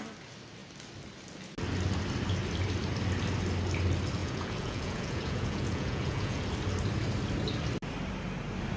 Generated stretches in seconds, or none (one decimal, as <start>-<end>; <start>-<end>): 4.2-6.4